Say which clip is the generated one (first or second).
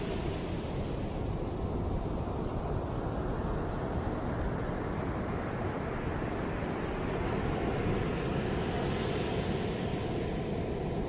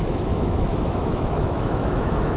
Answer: second